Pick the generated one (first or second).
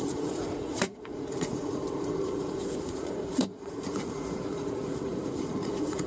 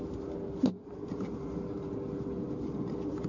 first